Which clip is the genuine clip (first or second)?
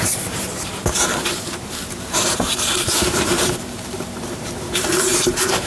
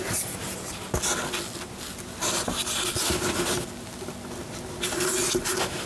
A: second